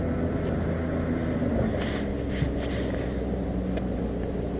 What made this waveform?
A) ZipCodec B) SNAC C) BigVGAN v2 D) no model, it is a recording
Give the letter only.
D